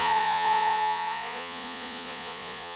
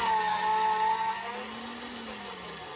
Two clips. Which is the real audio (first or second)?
second